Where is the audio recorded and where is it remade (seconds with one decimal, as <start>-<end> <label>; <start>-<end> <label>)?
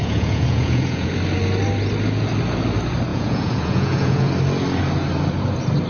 0.0-1.1 remade; 1.1-3.1 recorded; 3.1-4.3 remade; 4.3-5.9 recorded